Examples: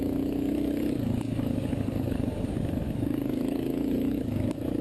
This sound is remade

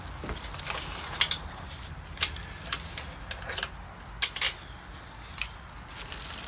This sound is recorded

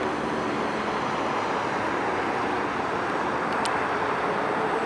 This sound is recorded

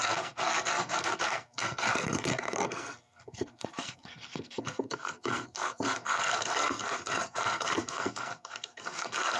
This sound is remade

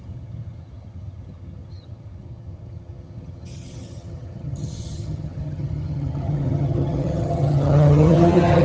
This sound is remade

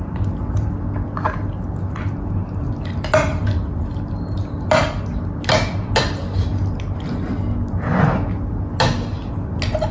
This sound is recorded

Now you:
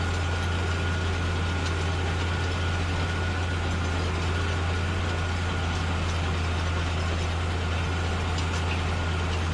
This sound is recorded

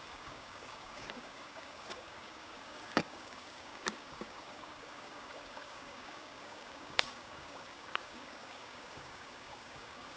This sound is remade